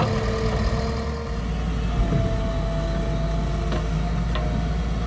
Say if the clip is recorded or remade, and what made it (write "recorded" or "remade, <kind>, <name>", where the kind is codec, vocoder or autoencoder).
recorded